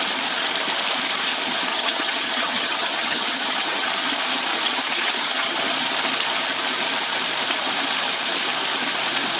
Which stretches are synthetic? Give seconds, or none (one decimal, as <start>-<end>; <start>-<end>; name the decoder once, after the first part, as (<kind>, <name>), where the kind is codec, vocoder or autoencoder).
1.7-3.9 (vocoder, HiFi-GAN); 4.5-5.6